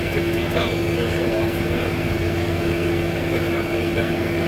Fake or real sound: fake